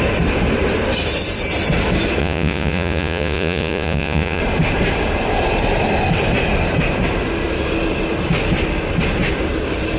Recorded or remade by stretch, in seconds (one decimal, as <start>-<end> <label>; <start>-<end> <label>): 0.0-2.2 recorded; 2.2-4.4 remade; 4.4-10.0 recorded